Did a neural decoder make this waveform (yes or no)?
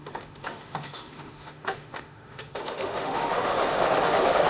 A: yes